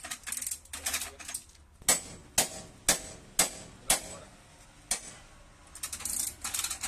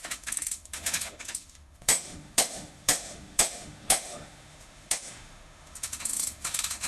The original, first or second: first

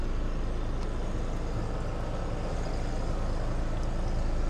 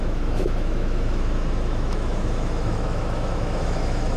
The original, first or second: first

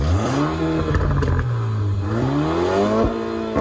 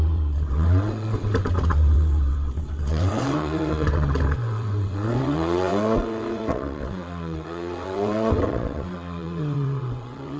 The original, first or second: first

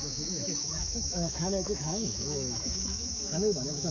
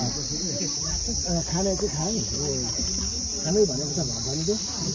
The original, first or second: second